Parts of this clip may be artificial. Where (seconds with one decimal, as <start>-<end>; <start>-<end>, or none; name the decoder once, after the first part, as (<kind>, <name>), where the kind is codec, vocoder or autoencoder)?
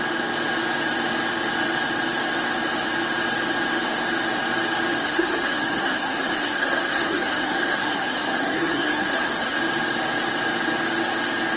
5.0-9.6 (codec, SNAC)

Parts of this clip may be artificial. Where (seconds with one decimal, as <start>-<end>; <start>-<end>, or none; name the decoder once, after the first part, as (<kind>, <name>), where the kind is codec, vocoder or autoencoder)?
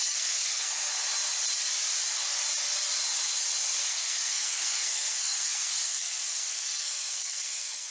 0.0-0.9 (codec, SNAC); 3.8-7.9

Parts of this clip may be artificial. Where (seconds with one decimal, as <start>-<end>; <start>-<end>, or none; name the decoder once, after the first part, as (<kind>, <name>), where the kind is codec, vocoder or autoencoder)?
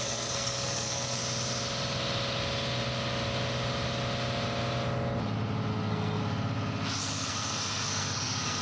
0.0-1.2 (codec, SNAC); 5.7-6.2; 7.0-8.6